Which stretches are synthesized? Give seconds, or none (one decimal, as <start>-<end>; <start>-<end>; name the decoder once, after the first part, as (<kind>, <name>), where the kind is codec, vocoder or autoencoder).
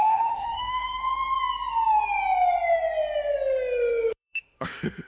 0.0-1.0 (autoencoder, DAC-VAE); 4.1-5.1